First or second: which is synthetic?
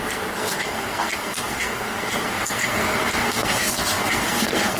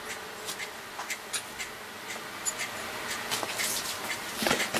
first